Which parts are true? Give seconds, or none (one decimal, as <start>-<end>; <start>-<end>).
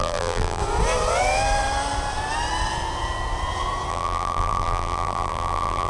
0.6-3.9